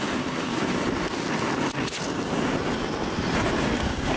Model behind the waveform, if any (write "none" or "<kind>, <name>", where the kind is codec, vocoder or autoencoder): none